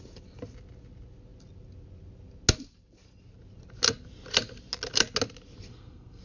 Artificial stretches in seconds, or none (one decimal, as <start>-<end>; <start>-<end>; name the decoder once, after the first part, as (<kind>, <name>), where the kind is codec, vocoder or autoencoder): 5.7-6.2 (codec, SNAC)